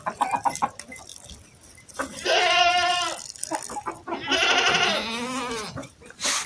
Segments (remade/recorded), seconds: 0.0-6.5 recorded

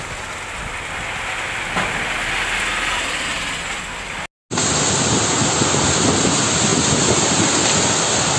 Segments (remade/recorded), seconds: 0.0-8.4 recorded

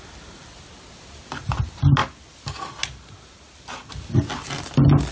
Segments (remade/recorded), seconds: 0.0-5.1 recorded